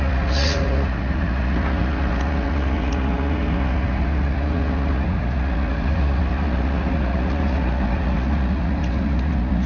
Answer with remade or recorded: remade